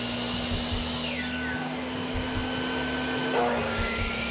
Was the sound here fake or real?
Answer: real